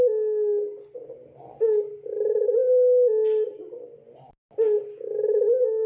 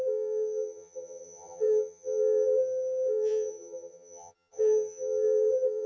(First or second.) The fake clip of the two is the second